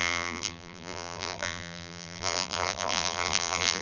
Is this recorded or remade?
remade